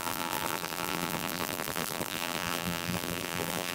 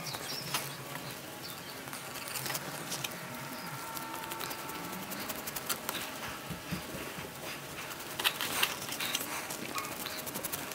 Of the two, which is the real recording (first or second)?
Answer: second